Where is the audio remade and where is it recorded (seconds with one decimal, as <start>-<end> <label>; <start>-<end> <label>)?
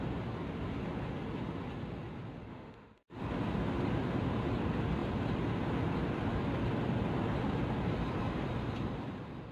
0.0-2.5 recorded; 2.5-3.2 remade; 3.2-9.5 recorded